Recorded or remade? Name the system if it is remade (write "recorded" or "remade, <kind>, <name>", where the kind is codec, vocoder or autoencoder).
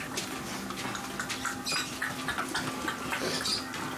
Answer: recorded